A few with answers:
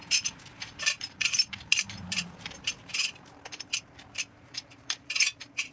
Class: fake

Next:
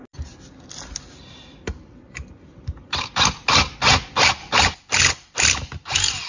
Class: real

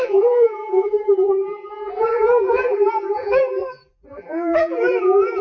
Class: fake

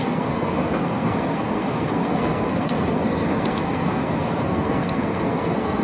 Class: fake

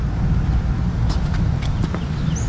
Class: real